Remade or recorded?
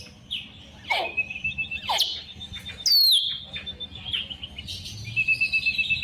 recorded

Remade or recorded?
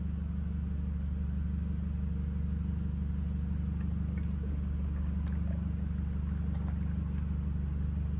recorded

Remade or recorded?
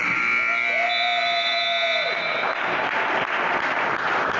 recorded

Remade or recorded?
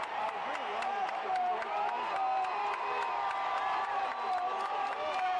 recorded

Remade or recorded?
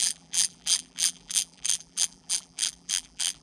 remade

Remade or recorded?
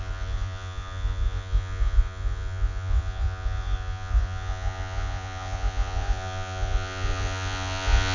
remade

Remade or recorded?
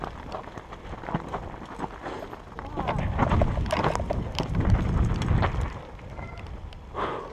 recorded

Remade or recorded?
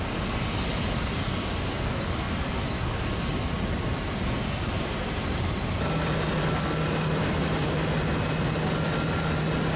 recorded